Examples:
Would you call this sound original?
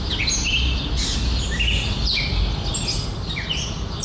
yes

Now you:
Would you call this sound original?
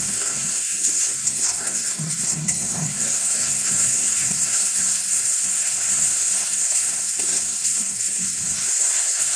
no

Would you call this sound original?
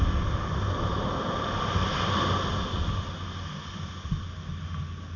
yes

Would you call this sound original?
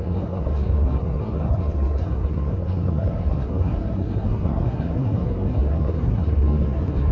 no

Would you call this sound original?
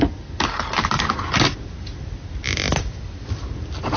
yes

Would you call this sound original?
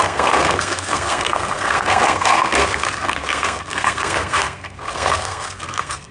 no